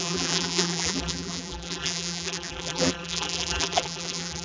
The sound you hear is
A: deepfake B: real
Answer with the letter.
A